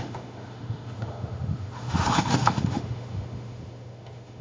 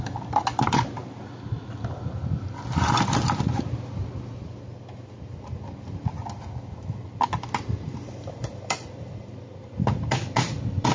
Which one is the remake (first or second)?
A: first